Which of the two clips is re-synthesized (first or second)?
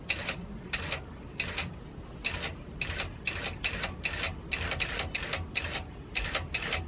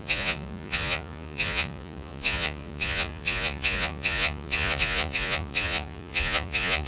second